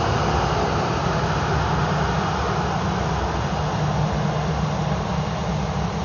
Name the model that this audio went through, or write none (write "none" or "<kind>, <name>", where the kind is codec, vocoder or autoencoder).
none